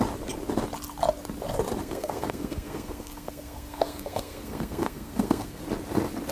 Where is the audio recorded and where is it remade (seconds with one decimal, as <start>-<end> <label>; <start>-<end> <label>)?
0.0-1.8 recorded; 1.8-5.6 remade; 5.6-6.3 recorded